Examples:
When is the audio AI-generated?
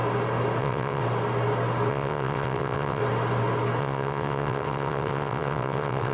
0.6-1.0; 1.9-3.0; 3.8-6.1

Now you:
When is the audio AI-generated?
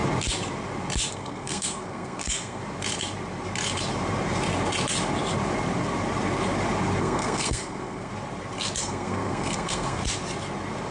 1.1-2.6; 7.0-8.1; 8.8-10.0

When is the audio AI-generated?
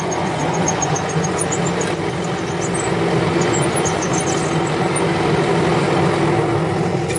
0.0-1.4; 3.3-4.1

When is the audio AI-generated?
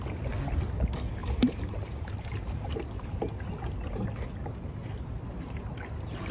1.2-3.1; 4.8-5.6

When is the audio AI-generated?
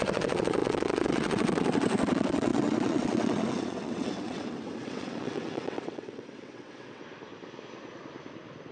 0.0-7.0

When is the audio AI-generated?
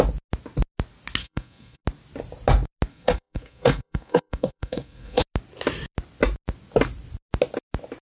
1.2-1.8; 2.9-5.2